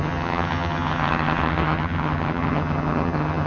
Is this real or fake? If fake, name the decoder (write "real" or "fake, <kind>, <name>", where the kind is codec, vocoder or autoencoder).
fake, vocoder, HiFi-GAN